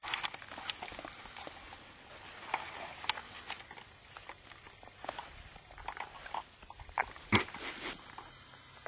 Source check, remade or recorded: recorded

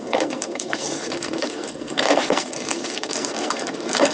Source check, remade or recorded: remade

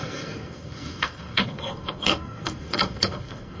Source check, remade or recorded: remade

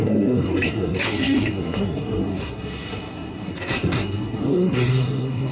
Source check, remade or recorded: remade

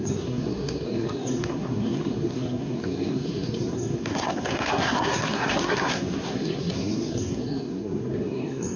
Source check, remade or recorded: remade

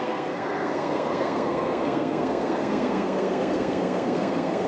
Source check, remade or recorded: remade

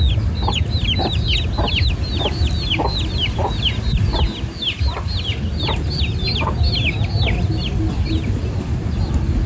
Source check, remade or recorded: recorded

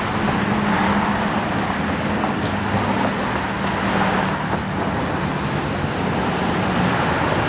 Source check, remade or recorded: recorded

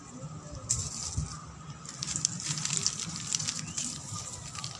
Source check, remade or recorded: recorded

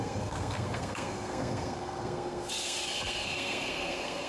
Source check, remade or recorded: remade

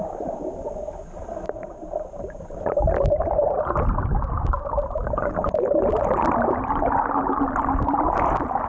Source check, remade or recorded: recorded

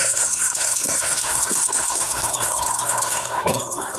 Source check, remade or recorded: remade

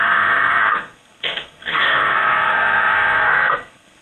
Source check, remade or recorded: remade